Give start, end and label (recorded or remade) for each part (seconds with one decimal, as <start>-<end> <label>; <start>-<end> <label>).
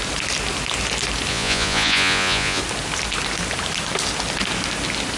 0.0-1.3 recorded; 1.3-2.6 remade; 2.6-5.2 recorded